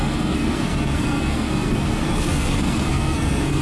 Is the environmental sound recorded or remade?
remade